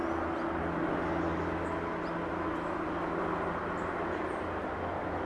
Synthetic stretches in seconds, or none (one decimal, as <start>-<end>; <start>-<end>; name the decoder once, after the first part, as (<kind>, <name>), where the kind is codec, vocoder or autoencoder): none